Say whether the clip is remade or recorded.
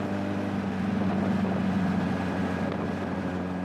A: recorded